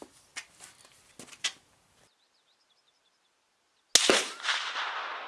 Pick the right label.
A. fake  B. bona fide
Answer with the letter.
B